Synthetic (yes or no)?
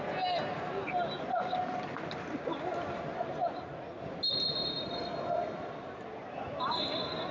no